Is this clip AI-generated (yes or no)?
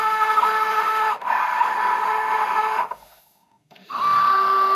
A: yes